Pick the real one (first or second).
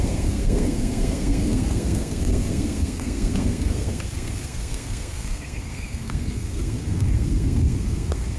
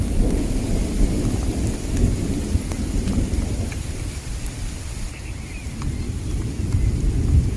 second